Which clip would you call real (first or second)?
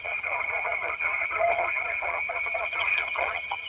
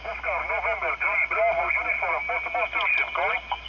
second